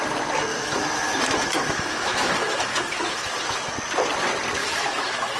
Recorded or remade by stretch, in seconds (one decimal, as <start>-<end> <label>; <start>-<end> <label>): 0.0-0.5 recorded; 0.5-3.7 remade; 3.7-4.6 recorded; 4.6-5.4 remade